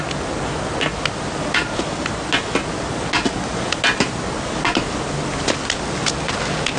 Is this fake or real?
real